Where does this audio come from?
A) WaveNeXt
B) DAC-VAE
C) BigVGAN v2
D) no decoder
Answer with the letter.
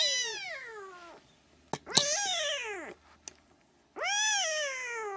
D